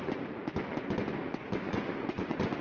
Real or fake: fake